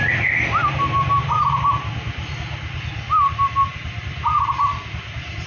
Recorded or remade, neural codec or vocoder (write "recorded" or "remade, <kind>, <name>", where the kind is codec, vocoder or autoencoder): recorded